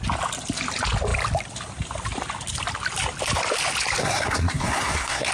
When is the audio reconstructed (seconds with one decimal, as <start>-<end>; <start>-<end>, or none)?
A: 4.0-5.3